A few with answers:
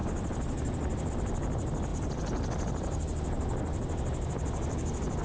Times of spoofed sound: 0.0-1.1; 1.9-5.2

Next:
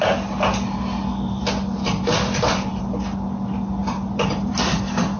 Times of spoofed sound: 1.8-2.8; 3.8-5.2

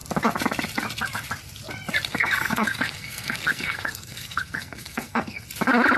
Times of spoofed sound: 2.1-5.4

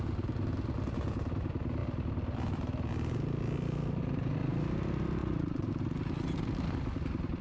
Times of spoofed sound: 5.2-5.7